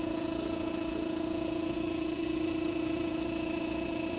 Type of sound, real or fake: fake